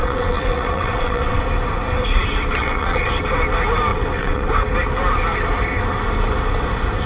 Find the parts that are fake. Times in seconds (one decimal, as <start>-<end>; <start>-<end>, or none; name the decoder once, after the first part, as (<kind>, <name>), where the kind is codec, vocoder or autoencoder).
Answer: 0.0-1.4 (vocoder, WaveNeXt); 2.6-3.1; 3.9-4.5